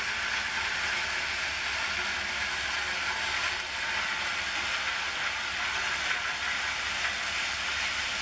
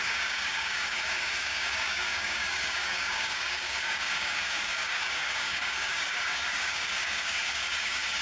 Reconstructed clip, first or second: second